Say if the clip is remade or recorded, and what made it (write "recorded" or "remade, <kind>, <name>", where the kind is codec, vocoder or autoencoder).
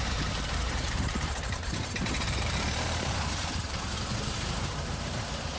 remade, vocoder, BigVGAN v2